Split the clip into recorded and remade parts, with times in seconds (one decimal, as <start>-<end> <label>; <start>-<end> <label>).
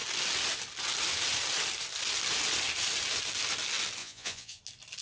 0.0-4.0 recorded; 4.0-4.6 remade; 4.6-5.0 recorded